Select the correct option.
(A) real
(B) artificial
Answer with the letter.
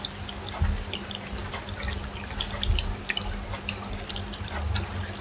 A